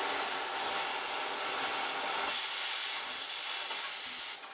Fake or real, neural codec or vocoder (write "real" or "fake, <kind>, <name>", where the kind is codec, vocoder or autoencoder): real